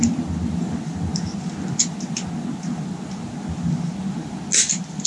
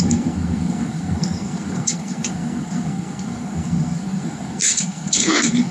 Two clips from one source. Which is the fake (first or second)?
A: second